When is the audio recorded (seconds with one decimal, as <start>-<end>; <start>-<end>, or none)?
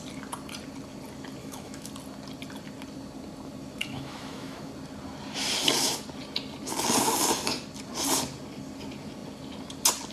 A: 0.0-1.4; 1.9-3.8; 4.7-10.1